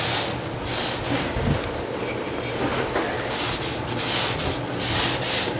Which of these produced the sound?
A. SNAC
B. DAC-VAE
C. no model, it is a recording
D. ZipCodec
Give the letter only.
C